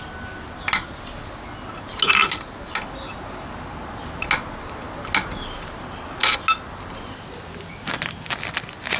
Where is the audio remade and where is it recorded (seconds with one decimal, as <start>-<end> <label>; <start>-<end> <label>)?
0.0-9.0 recorded